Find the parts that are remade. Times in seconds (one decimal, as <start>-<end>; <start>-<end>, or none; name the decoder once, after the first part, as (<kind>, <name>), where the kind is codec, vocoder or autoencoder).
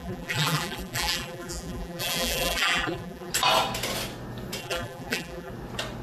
0.0-3.3 (vocoder, BigVGAN v2); 4.6-5.5